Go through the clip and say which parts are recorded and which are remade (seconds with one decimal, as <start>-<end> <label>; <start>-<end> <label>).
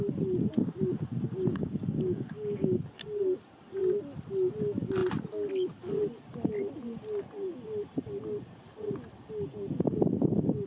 0.0-1.5 recorded; 1.5-2.8 remade; 2.8-10.7 recorded